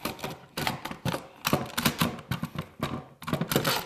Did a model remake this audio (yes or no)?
no